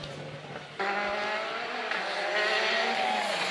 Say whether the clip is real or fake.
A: real